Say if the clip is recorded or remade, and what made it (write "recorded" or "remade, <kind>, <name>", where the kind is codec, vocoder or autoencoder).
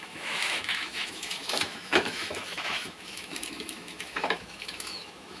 remade, autoencoder, DAC-VAE